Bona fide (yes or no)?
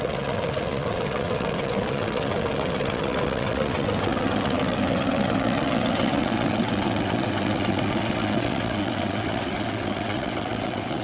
no